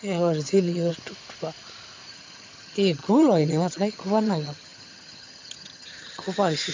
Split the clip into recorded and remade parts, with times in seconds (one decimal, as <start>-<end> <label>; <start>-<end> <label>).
0.0-0.9 remade; 0.9-2.1 recorded; 2.1-6.7 remade